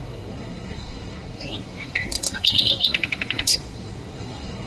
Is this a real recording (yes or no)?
no